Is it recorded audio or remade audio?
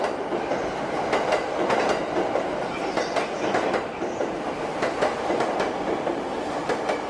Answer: recorded